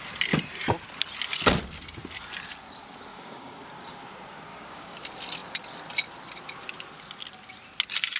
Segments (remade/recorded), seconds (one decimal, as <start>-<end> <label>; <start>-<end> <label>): 0.0-3.1 recorded; 3.1-3.7 remade; 3.7-4.5 recorded; 4.5-5.0 remade; 5.0-8.2 recorded

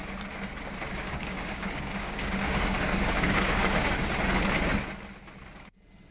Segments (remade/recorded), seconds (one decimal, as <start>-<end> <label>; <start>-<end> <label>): 0.0-0.9 recorded; 0.9-3.9 remade; 3.9-6.1 recorded

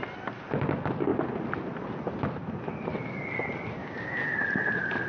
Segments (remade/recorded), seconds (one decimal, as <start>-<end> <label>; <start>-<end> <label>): 0.0-3.8 recorded; 3.8-4.3 remade; 4.3-5.1 recorded

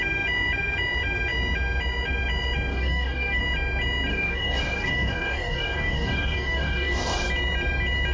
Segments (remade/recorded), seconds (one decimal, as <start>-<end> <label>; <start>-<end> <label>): 0.0-2.7 recorded; 2.7-3.4 remade; 3.4-4.1 recorded; 4.1-7.3 remade; 7.3-8.1 recorded

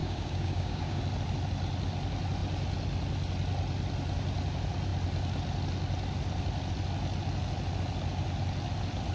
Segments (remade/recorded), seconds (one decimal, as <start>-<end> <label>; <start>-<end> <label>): 0.0-1.0 remade; 1.0-9.1 recorded

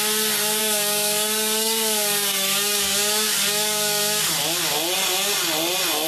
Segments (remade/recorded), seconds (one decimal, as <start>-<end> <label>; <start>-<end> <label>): 0.0-0.6 recorded; 0.6-4.3 remade; 4.3-6.1 recorded

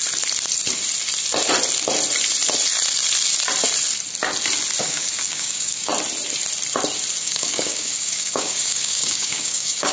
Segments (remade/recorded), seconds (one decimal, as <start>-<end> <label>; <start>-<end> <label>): 0.0-4.8 recorded; 4.8-5.9 remade; 5.9-7.2 recorded; 7.2-9.9 remade

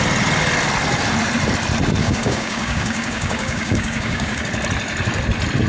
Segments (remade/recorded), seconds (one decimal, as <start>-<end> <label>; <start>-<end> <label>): 0.0-2.0 recorded; 2.0-4.4 remade; 4.4-5.7 recorded